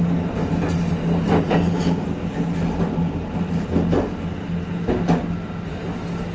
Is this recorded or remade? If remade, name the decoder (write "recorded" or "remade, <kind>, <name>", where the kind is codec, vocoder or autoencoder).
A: recorded